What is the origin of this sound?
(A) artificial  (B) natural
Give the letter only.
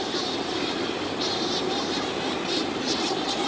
A